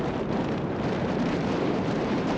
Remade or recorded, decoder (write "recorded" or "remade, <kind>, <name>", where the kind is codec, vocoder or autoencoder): remade, vocoder, BigVGAN v2